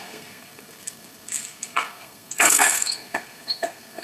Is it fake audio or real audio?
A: fake